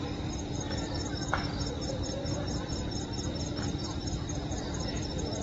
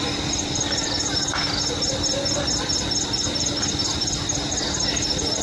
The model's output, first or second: first